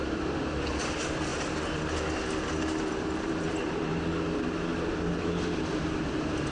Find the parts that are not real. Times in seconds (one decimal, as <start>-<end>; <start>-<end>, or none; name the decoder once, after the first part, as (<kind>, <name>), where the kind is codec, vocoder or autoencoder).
0.0-1.3 (vocoder, BigVGAN v2); 3.2-3.9